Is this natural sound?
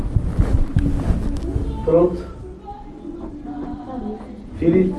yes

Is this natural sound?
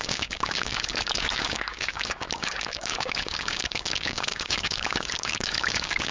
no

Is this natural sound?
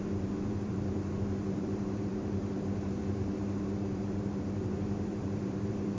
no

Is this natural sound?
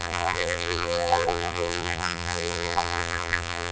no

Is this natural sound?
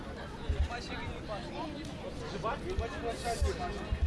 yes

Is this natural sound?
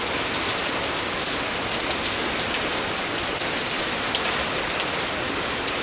yes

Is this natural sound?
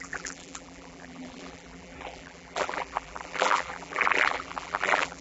no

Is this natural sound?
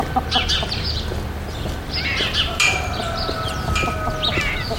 yes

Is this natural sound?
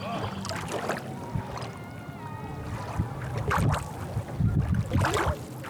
yes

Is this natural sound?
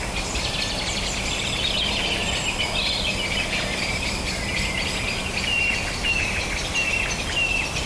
no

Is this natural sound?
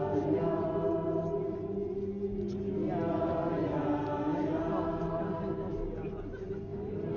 yes